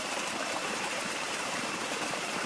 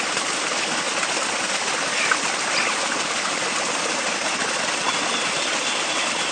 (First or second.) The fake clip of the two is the first